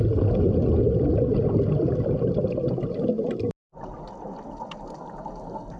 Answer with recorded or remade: recorded